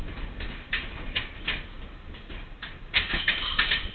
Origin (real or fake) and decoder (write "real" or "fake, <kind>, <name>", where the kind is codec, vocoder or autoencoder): real